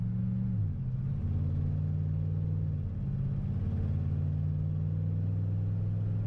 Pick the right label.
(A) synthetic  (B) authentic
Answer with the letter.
B